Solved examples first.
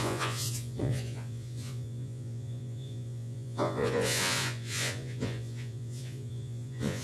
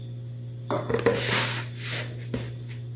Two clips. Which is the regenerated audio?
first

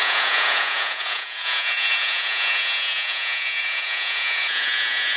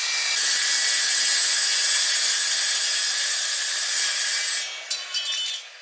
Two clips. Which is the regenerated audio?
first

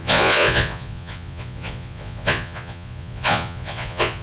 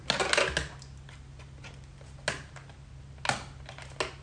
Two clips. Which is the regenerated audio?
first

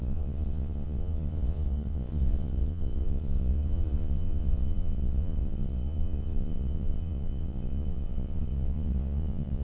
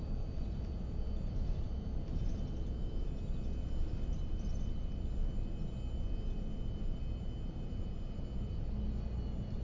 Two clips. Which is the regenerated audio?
first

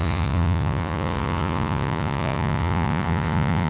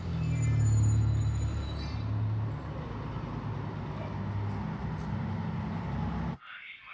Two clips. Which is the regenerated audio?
first